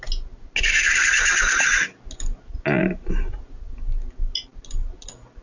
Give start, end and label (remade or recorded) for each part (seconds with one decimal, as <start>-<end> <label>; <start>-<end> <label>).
0.0-2.8 recorded; 2.8-3.4 remade; 3.4-5.4 recorded